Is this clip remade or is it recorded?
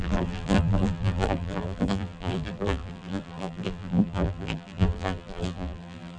remade